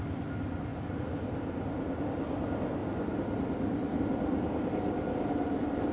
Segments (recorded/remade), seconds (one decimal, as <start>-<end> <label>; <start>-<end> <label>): 0.0-5.9 recorded